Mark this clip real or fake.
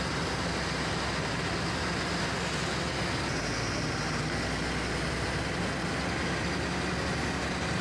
real